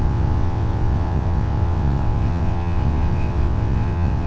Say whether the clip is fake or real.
fake